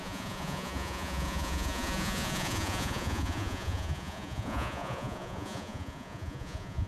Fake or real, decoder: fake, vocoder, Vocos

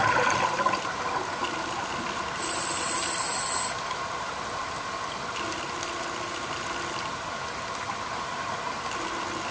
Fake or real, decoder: real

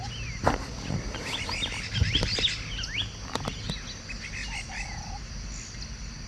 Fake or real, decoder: real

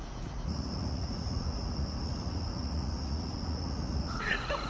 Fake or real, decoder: fake, vocoder, Vocos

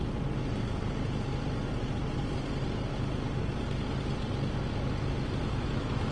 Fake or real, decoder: real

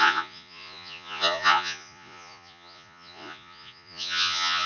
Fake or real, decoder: fake, vocoder, Vocos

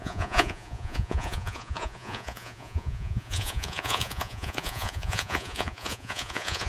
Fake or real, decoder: fake, vocoder, Vocos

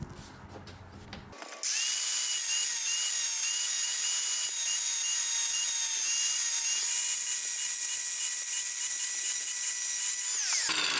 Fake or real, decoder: real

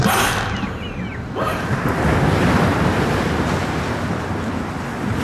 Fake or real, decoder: real